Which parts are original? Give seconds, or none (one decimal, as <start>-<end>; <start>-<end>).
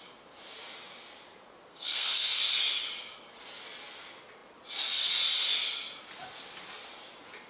0.0-1.7; 2.4-7.5